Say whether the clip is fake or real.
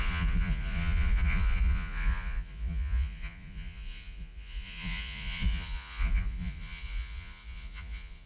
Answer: fake